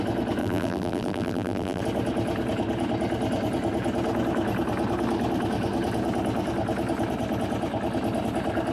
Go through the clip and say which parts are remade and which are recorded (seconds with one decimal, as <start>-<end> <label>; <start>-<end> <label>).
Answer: 0.0-0.4 recorded; 0.4-1.8 remade; 1.8-8.7 recorded